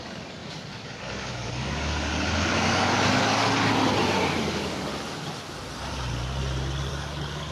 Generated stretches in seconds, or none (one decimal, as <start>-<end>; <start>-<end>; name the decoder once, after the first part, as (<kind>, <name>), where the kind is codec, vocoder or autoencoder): 0.0-3.8 (codec, DAC); 4.4-4.9; 6.9-7.5